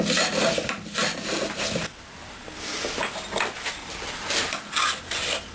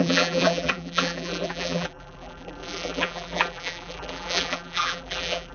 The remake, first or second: second